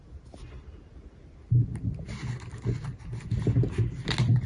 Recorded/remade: recorded